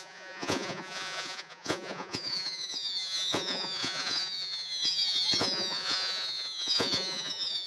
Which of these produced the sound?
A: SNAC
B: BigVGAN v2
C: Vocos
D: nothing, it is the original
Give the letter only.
C